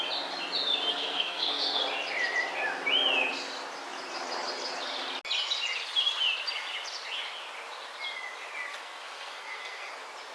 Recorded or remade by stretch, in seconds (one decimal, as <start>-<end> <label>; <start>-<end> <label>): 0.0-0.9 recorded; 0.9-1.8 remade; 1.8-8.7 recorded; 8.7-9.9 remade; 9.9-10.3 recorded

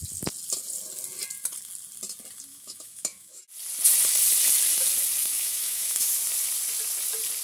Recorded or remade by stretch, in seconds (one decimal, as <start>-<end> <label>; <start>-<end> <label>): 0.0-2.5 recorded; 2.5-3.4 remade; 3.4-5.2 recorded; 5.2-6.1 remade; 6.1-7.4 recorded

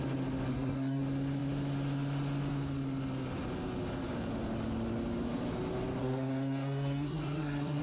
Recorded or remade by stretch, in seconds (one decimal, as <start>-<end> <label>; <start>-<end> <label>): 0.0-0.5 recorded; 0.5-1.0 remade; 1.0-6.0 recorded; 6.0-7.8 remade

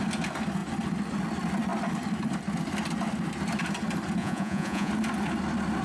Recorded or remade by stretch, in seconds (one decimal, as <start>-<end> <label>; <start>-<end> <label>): 0.0-4.2 recorded; 4.2-4.9 remade; 4.9-5.8 recorded

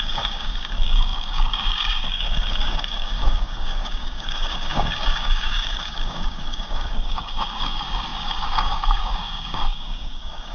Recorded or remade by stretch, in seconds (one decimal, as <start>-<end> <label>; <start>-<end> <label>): 0.0-10.5 remade